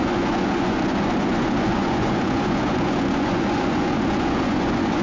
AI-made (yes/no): yes